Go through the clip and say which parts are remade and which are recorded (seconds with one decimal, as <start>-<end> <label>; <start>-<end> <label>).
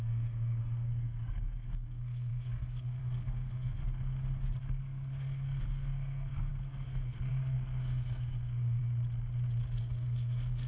0.0-3.8 remade; 3.8-4.8 recorded; 4.8-8.8 remade; 8.8-9.8 recorded; 9.8-10.7 remade